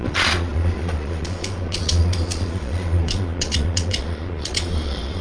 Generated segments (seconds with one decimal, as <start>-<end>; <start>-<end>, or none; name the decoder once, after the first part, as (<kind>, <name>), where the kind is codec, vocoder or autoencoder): 0.0-5.2 (vocoder, Vocos)